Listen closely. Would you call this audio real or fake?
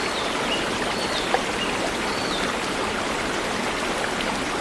real